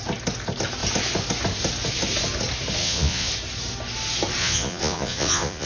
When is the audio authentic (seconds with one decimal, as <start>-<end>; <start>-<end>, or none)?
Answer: 0.0-2.8; 3.3-4.4